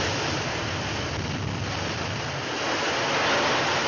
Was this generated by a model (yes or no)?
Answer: no